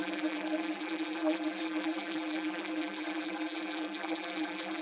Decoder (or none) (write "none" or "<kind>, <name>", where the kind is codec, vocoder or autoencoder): vocoder, BigVGAN v2